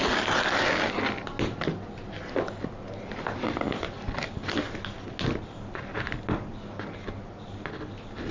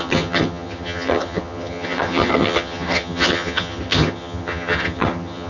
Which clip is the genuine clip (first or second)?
first